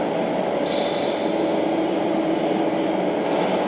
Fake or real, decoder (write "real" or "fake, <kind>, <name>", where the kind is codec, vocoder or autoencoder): real